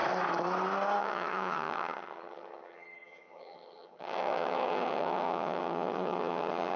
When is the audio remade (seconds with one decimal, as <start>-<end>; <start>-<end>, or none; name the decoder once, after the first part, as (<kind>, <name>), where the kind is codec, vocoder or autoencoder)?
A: 1.0-6.8 (vocoder, HiFi-GAN)